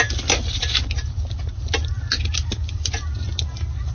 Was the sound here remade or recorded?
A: recorded